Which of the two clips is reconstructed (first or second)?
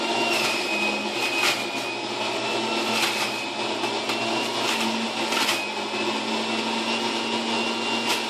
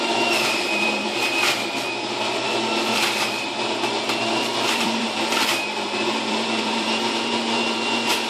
second